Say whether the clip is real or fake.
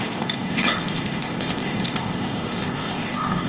fake